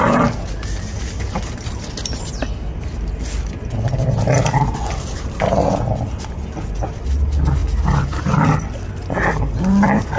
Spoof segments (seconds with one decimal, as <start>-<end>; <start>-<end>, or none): none